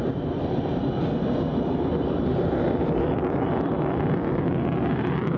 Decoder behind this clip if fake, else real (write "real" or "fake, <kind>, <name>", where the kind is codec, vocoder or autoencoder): real